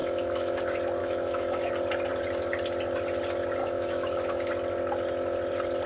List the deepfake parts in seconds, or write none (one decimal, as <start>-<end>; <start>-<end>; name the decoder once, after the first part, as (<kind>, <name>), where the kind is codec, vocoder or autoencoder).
0.0-0.6 (autoencoder, DAC-VAE); 1.0-1.7; 3.6-4.5

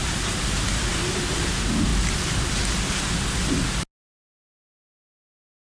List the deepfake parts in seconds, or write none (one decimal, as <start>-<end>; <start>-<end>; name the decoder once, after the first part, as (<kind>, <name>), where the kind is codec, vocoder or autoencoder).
0.0-0.9 (vocoder, BigVGAN v2); 1.4-1.9; 5.3-5.7

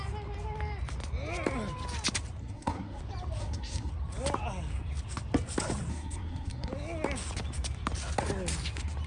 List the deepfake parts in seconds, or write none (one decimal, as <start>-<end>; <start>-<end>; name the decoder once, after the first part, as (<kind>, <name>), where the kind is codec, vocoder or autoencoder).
2.4-3.0 (codec, SNAC); 3.4-3.9; 5.9-6.7

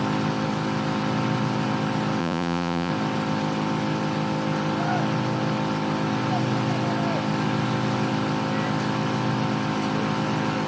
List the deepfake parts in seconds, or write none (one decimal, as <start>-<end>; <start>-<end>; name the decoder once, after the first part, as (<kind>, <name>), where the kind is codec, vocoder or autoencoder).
2.2-2.9 (vocoder, Vocos)

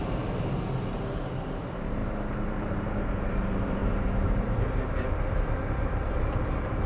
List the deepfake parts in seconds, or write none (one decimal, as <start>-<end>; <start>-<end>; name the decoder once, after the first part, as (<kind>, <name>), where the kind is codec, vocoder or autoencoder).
1.6-6.9 (vocoder, BigVGAN v2)

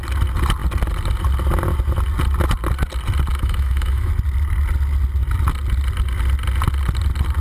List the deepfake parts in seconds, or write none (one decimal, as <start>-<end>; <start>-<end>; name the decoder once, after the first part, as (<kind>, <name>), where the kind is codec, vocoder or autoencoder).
3.3-4.1 (autoencoder, DAC-VAE)

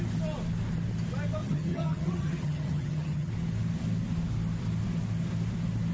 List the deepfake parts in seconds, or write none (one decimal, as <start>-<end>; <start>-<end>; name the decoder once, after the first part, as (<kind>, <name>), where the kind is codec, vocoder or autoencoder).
1.4-3.3 (vocoder, HiFi-GAN)

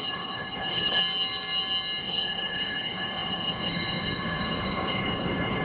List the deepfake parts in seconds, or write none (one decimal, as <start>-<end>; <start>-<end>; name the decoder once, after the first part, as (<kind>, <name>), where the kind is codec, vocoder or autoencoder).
0.0-1.0 (codec, HILCodec); 2.0-5.6